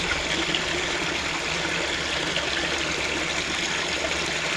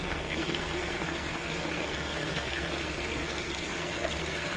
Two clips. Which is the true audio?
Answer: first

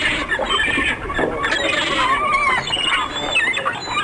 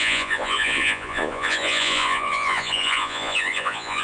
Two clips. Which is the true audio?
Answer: first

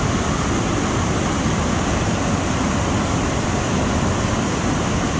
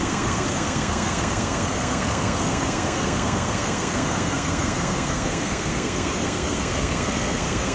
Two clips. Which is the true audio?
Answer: first